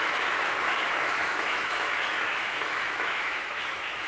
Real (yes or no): no